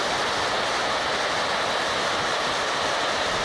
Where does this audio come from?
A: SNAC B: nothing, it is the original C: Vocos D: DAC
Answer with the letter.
B